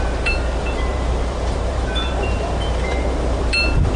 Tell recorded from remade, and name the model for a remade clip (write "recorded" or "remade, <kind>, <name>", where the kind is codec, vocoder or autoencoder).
remade, vocoder, BigVGAN v2